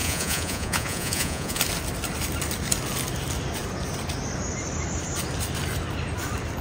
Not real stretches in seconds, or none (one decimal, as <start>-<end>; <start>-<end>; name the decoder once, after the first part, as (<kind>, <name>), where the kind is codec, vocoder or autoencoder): 0.0-1.6 (vocoder, Vocos)